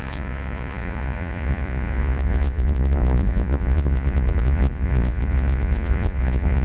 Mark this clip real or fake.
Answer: fake